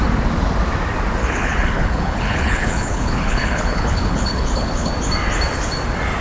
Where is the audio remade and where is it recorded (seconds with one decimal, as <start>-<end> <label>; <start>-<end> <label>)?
0.0-1.2 recorded; 1.2-4.9 remade; 4.9-6.2 recorded